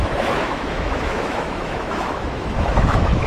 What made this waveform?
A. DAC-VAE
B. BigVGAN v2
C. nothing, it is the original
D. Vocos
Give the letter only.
A